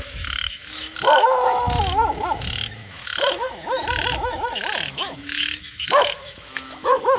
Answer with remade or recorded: remade